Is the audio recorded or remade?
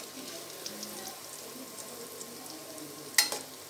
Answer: recorded